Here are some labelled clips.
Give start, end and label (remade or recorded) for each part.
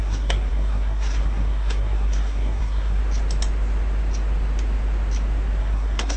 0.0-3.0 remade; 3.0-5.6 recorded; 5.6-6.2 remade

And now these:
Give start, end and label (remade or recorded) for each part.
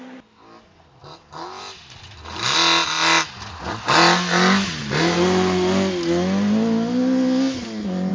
0.0-8.1 recorded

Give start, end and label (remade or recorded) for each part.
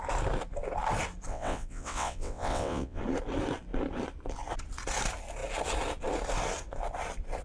0.0-1.3 recorded; 1.3-3.0 remade; 3.0-7.4 recorded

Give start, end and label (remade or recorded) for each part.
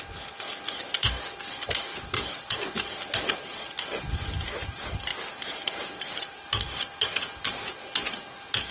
0.0-1.9 recorded; 1.9-2.6 remade; 2.6-5.1 recorded; 5.1-6.8 remade; 6.8-8.7 recorded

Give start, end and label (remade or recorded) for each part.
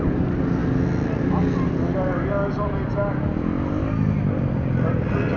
0.0-5.4 recorded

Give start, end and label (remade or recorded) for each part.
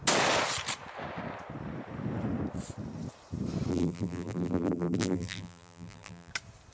0.0-3.7 recorded; 3.7-6.3 remade; 6.3-6.7 recorded